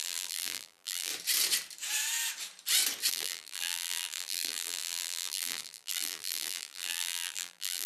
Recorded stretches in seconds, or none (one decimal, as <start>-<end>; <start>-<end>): 1.1-3.1